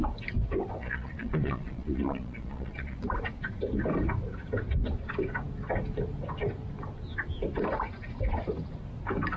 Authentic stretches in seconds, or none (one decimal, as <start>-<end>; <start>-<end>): 0.0-0.8; 3.0-9.4